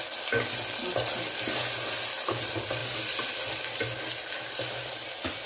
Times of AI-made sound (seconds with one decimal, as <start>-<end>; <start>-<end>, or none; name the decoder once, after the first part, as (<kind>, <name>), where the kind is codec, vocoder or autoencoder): none